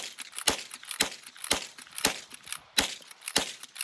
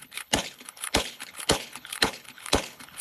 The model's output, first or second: second